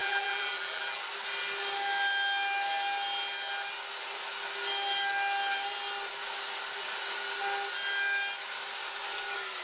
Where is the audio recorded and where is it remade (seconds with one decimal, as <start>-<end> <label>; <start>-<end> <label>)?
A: 0.0-1.0 remade; 1.0-9.6 recorded